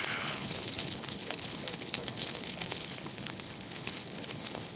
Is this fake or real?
fake